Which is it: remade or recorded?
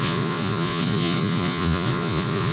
remade